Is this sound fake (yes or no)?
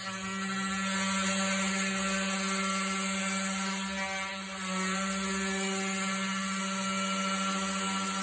no